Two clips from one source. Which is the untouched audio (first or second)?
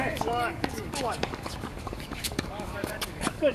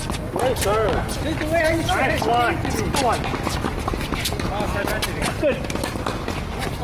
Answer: second